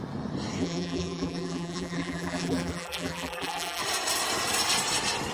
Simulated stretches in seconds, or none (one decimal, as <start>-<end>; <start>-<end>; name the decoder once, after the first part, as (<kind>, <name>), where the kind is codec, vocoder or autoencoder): 0.6-3.8 (vocoder, BigVGAN v2)